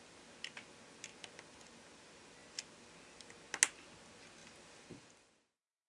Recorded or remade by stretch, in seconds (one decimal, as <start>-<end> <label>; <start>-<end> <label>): 0.0-5.9 recorded